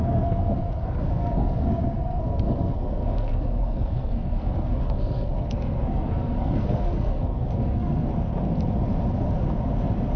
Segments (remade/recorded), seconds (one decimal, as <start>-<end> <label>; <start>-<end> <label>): 0.0-8.1 remade; 8.1-10.2 recorded